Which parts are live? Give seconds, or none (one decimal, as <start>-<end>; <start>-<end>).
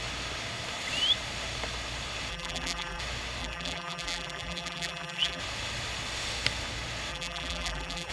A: 0.0-2.3; 3.0-3.4; 5.4-7.1